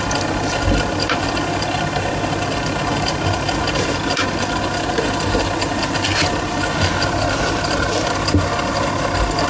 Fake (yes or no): no